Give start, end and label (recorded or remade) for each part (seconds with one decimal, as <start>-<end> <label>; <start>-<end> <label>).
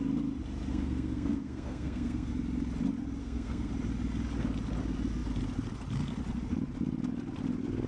0.0-0.7 recorded; 0.7-2.3 remade; 2.3-3.2 recorded; 3.2-3.7 remade; 3.7-7.9 recorded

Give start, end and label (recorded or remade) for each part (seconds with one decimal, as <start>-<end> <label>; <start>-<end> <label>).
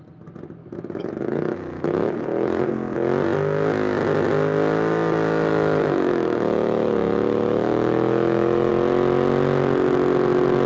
0.0-0.6 recorded; 0.6-2.7 remade; 2.7-5.5 recorded; 5.5-8.7 remade; 8.7-10.7 recorded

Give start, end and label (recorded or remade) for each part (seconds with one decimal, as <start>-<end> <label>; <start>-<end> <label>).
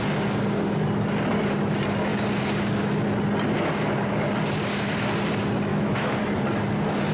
0.0-5.7 recorded; 5.7-6.2 remade; 6.2-7.1 recorded